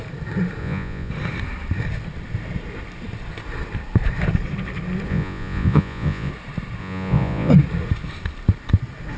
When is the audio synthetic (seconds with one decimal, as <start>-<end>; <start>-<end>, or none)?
0.6-1.1; 5.1-6.3; 6.8-7.5